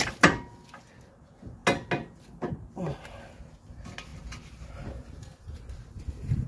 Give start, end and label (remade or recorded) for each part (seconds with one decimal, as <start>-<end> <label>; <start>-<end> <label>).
0.0-6.5 recorded